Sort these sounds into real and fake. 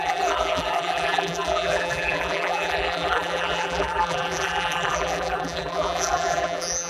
fake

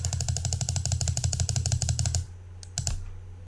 real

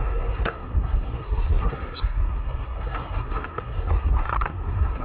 fake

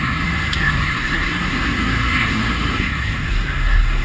fake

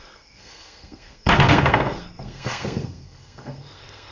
fake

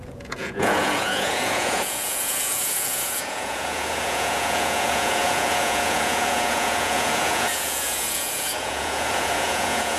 fake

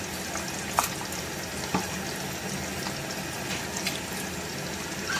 real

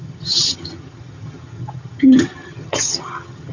fake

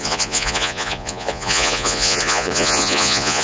fake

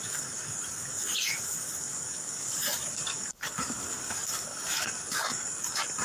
fake